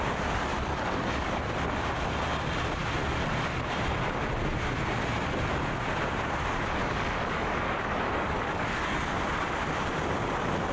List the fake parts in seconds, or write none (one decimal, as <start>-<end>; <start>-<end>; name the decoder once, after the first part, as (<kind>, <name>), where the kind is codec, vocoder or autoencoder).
0.5-1.4 (codec, DAC); 6.8-9.0